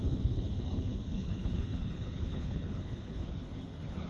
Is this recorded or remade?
remade